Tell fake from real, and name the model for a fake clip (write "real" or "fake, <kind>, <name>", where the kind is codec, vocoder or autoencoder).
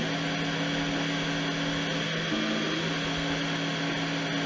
real